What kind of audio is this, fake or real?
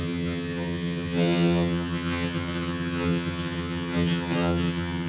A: fake